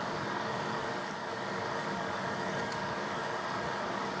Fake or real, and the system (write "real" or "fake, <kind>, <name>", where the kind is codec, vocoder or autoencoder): fake, codec, DAC